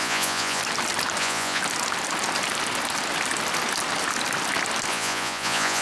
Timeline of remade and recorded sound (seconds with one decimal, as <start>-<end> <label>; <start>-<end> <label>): 0.0-0.6 remade; 0.6-1.2 recorded; 1.2-1.6 remade; 1.6-4.9 recorded; 4.9-5.8 remade